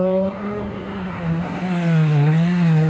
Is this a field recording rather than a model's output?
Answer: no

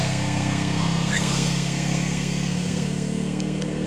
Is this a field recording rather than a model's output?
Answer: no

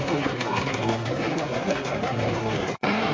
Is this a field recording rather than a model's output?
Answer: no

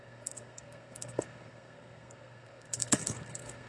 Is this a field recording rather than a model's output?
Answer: no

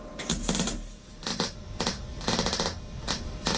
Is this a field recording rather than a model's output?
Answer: yes